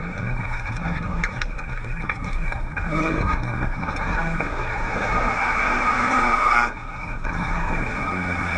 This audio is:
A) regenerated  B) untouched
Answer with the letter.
A